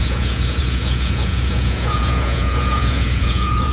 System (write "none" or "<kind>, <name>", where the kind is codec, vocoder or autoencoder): vocoder, Vocos